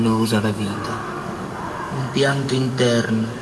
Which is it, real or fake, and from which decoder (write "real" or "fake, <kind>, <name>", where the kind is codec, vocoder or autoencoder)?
fake, codec, DAC